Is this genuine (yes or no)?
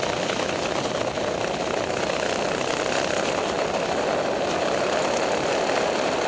yes